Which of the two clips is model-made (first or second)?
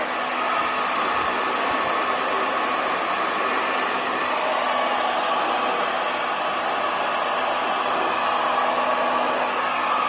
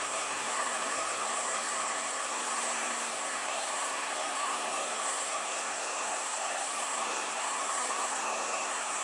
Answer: second